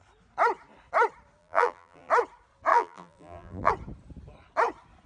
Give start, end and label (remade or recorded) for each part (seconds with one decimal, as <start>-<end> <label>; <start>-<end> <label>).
0.0-1.4 recorded; 1.4-2.1 remade; 2.1-2.7 recorded; 2.7-3.7 remade; 3.7-5.1 recorded